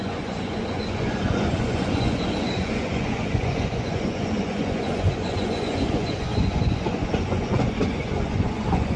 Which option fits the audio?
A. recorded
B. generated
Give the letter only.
B